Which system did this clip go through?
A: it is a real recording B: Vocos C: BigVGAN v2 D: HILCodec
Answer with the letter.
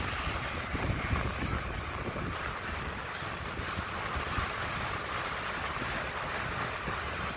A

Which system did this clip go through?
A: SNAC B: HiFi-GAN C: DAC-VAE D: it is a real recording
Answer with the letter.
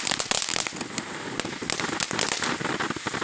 D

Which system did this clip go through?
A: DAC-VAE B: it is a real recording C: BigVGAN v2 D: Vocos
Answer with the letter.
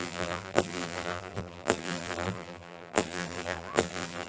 C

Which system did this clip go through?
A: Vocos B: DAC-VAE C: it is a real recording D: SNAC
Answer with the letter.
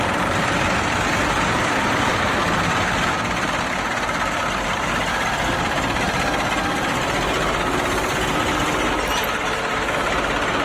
C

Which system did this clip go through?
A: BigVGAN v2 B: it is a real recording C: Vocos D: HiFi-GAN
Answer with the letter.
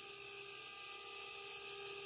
B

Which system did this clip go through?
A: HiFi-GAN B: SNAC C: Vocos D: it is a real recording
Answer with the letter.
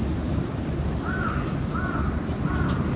D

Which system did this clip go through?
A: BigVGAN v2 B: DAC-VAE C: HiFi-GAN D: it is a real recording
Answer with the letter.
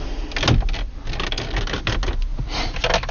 D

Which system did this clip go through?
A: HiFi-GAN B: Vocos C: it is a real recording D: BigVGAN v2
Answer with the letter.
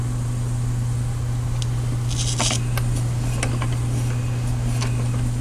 C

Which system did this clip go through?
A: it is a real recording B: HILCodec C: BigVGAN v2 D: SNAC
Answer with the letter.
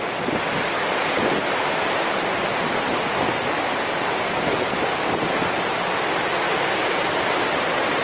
A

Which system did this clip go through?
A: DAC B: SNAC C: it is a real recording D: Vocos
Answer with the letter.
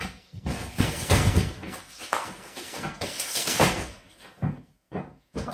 B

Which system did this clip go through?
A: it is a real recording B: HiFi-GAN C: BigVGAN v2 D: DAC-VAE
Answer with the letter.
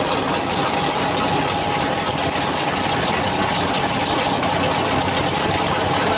A